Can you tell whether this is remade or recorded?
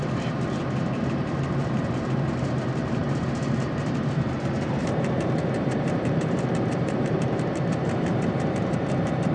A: remade